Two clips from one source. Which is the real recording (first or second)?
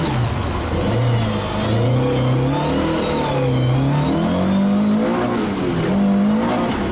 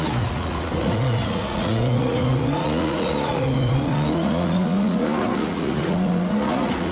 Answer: first